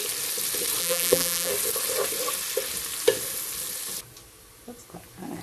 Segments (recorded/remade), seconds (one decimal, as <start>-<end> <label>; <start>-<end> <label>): 0.0-0.8 recorded; 0.8-1.5 remade; 1.5-5.4 recorded